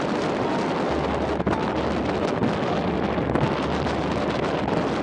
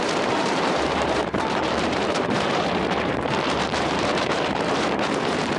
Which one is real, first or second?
first